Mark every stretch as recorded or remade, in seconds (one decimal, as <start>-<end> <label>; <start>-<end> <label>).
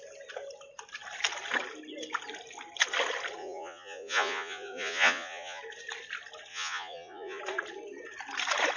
0.0-3.4 recorded; 3.4-5.6 remade; 5.6-6.5 recorded; 6.5-7.4 remade; 7.4-8.8 recorded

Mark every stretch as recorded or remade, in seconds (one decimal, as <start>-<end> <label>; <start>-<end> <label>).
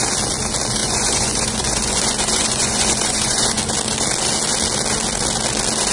0.0-0.8 recorded; 0.8-3.6 remade; 3.6-5.9 recorded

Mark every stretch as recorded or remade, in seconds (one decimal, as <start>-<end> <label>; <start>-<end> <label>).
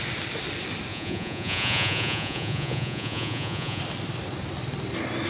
0.0-0.9 recorded; 0.9-3.8 remade; 3.8-5.3 recorded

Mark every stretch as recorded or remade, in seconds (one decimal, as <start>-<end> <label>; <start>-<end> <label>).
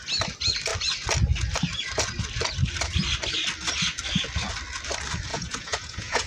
0.0-5.3 recorded; 5.3-6.3 remade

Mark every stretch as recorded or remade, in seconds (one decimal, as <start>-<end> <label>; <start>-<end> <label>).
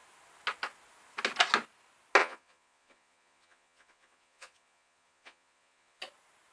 0.0-2.2 recorded; 2.2-6.0 remade; 6.0-6.5 recorded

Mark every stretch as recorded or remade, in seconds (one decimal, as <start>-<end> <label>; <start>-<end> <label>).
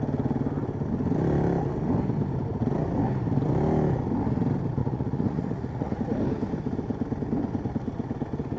0.0-4.8 recorded; 4.8-6.0 remade; 6.0-8.6 recorded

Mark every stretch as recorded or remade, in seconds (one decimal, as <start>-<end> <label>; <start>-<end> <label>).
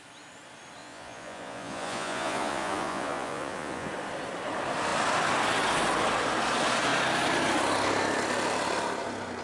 0.0-0.8 recorded; 0.8-3.9 remade; 3.9-9.4 recorded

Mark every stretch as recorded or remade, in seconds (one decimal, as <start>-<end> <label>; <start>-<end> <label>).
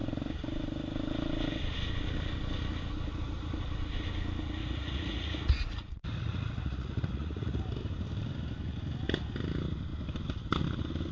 0.0-4.6 recorded; 4.6-7.6 remade; 7.6-11.1 recorded